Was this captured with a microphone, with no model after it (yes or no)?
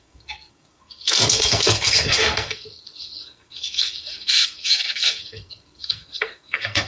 no